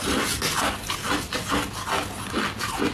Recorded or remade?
recorded